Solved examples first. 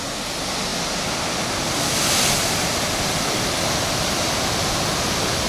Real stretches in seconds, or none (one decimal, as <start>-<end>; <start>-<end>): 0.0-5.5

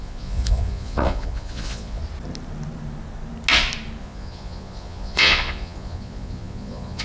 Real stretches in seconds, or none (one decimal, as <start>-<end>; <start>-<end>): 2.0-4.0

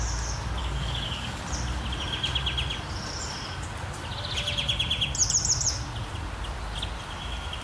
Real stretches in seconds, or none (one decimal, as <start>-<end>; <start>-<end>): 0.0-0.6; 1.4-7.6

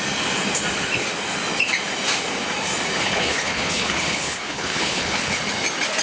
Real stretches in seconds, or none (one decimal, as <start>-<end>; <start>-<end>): 0.0-3.0; 5.4-6.0

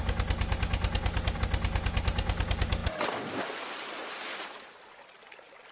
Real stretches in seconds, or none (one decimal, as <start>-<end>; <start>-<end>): 0.0-5.7

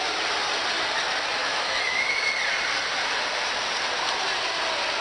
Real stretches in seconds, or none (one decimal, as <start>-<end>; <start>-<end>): 0.0-1.4; 2.2-5.0

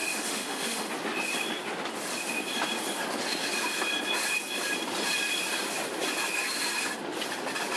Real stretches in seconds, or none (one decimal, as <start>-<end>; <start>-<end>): 0.9-7.8